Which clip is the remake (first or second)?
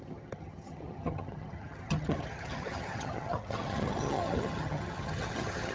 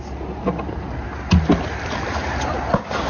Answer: first